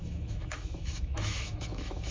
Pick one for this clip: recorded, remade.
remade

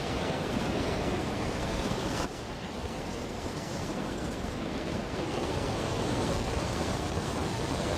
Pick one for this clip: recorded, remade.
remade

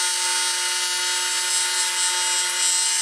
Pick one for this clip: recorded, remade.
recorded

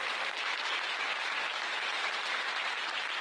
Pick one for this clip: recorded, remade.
remade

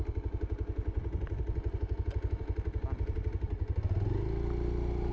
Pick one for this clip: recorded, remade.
recorded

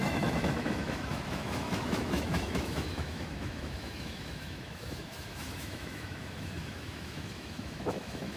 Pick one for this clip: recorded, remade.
remade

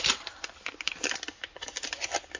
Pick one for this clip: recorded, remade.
recorded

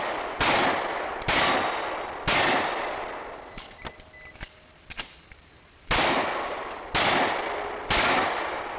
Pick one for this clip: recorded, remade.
recorded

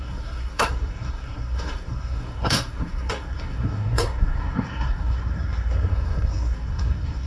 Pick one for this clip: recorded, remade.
remade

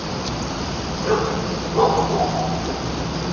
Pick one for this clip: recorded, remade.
remade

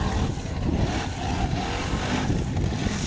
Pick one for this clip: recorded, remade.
recorded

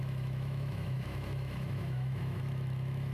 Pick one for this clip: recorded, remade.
remade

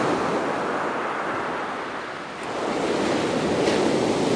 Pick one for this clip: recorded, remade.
recorded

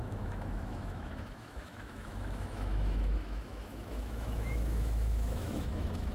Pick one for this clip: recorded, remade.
remade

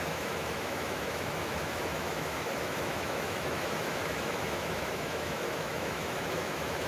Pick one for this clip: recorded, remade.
remade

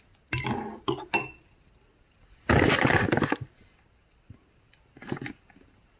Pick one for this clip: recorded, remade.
recorded